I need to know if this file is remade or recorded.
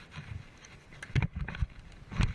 recorded